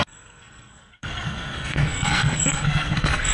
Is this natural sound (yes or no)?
no